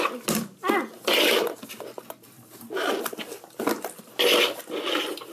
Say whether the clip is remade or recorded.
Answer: recorded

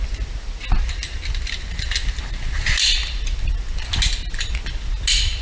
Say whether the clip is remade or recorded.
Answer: recorded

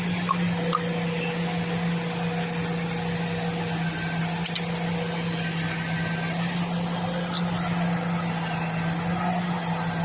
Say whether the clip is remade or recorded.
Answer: recorded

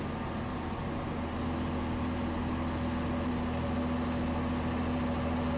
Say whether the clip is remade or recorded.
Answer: recorded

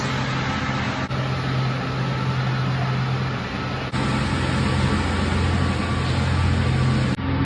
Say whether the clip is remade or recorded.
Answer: recorded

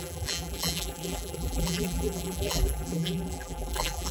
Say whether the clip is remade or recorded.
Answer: remade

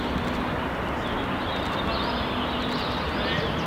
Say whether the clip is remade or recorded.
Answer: recorded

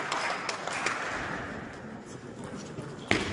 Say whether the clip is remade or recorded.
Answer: recorded